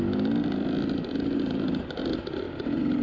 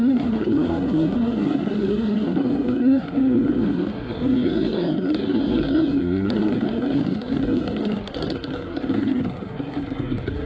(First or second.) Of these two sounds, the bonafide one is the first